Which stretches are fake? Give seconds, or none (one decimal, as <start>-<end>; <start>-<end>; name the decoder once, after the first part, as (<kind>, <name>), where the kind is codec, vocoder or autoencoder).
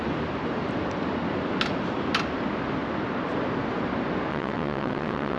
4.3-5.4 (vocoder, WaveNeXt)